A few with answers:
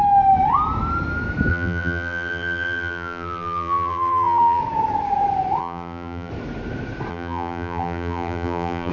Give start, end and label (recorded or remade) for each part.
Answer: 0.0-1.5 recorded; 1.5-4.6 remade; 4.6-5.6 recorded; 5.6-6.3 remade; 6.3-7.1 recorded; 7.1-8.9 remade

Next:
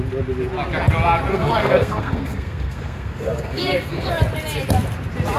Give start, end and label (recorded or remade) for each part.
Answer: 0.0-1.3 recorded; 1.3-4.1 remade; 4.1-5.4 recorded

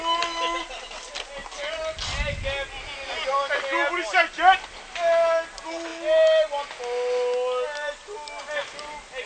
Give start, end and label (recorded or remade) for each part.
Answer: 0.0-9.3 recorded

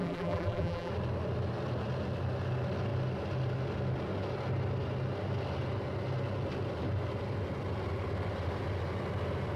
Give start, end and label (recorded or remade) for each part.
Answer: 0.0-0.9 remade; 0.9-9.6 recorded

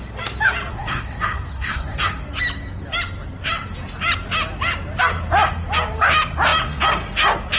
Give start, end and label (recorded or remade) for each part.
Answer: 0.0-0.7 recorded; 0.7-2.2 remade; 2.2-7.6 recorded

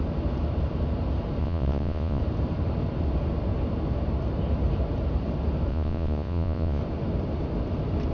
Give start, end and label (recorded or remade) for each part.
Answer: 0.0-1.4 recorded; 1.4-2.2 remade; 2.2-5.7 recorded; 5.7-6.8 remade; 6.8-8.1 recorded